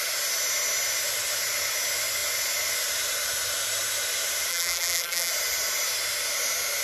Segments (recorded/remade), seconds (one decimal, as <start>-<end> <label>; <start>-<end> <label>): 0.0-4.5 recorded; 4.5-5.3 remade; 5.3-6.8 recorded